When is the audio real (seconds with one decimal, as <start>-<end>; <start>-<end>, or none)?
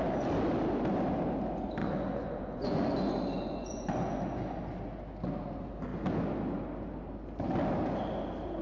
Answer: 0.0-1.8; 4.6-8.6